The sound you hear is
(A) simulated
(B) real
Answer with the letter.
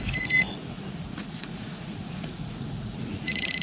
A